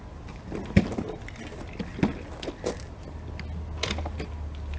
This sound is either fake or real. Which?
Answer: real